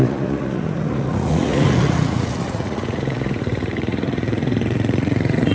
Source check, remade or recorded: remade